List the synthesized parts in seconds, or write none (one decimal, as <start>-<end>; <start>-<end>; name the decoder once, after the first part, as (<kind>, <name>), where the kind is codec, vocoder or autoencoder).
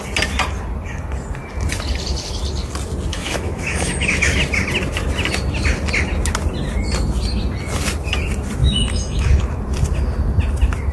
3.1-4.4 (autoencoder, DAC-VAE); 8.6-9.5